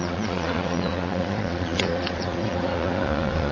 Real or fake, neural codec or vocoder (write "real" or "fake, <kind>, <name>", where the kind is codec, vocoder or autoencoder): fake, vocoder, Vocos